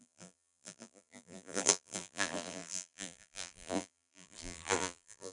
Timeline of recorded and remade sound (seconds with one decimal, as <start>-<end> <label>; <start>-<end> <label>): 0.0-5.3 remade